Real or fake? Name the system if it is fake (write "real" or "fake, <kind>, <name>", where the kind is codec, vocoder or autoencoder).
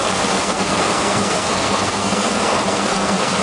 fake, codec, SNAC